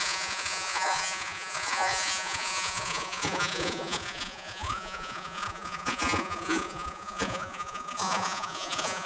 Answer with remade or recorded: remade